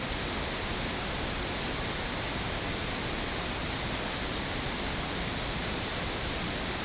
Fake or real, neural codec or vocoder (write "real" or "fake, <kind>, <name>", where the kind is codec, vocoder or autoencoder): real